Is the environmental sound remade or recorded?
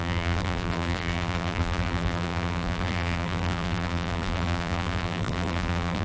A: remade